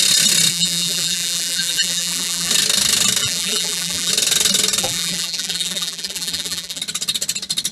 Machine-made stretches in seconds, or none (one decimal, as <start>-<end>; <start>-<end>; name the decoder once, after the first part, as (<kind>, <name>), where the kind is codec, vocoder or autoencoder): 0.5-2.5 (vocoder, BigVGAN v2); 3.2-4.1; 4.8-6.8